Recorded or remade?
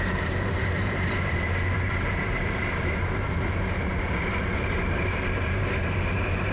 remade